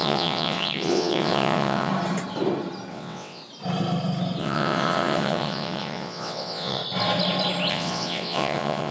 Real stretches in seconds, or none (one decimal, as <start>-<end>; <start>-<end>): 1.9-2.9; 3.4-4.4; 6.8-7.7